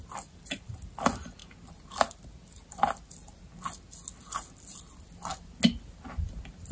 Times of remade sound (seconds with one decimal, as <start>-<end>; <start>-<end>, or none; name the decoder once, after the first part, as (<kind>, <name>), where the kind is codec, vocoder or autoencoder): none